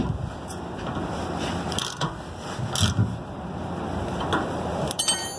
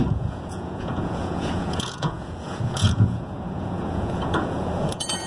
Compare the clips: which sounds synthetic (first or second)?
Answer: second